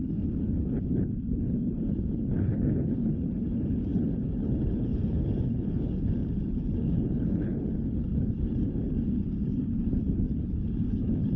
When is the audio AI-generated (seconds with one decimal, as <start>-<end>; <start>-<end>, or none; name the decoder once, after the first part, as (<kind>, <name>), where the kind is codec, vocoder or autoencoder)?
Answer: 0.0-11.4 (codec, HILCodec)